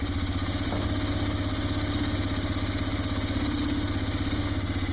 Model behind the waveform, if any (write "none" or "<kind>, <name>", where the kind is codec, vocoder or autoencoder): none